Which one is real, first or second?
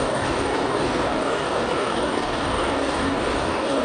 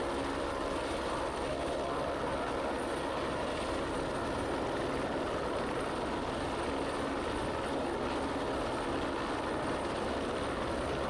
second